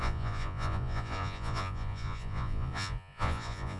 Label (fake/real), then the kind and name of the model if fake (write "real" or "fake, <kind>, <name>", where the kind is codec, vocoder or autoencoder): fake, vocoder, Vocos